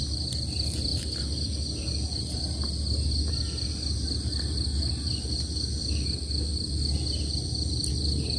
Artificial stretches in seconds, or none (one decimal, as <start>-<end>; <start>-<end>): none